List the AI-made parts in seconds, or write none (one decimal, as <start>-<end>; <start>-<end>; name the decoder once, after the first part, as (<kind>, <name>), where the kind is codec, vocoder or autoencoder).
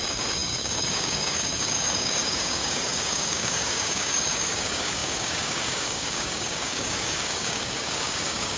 0.0-8.6 (codec, DAC)